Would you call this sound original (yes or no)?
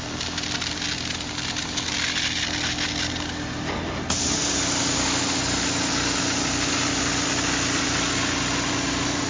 yes